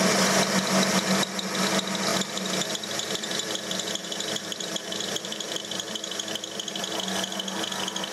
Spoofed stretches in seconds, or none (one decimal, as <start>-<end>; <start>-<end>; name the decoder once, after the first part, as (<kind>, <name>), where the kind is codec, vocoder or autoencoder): 4.0-5.7 (vocoder, BigVGAN v2)